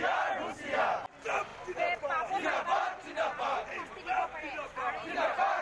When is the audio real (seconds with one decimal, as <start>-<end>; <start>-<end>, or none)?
0.0-5.6